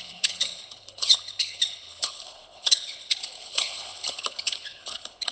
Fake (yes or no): yes